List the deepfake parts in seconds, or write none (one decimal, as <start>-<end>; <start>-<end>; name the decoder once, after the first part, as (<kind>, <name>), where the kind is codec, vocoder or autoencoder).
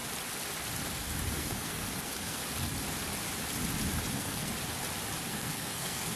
1.3-2.4 (codec, SNAC); 4.1-4.5; 5.3-6.2